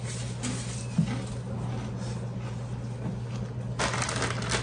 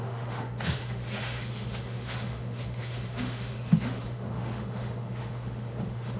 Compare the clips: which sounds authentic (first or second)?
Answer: first